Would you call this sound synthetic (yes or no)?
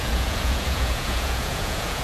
yes